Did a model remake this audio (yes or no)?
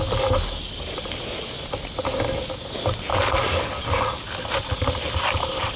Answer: no